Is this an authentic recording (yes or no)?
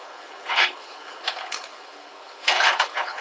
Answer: no